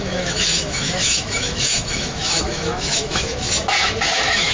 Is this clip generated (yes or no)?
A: yes